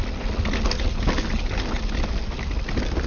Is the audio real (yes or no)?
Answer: yes